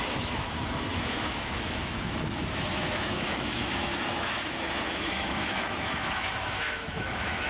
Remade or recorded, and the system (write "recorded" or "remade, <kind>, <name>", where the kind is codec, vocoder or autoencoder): remade, autoencoder, DAC-VAE